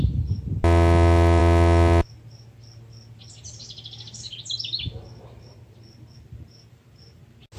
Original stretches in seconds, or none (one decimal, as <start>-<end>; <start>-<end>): 0.0-7.6